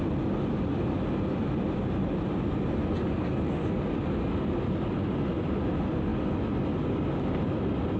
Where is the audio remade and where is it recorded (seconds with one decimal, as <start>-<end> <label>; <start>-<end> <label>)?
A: 0.0-8.0 recorded